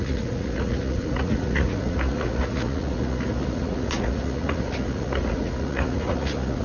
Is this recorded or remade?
remade